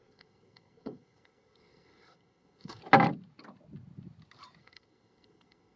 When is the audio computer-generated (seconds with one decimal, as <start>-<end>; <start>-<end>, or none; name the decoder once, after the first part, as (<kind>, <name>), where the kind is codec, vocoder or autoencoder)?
0.0-2.8 (codec, SNAC); 4.6-5.8